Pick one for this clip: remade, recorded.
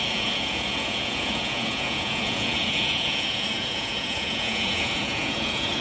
remade